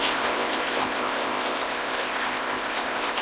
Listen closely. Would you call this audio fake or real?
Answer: fake